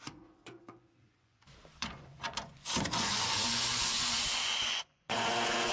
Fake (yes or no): yes